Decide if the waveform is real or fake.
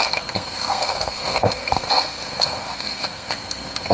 fake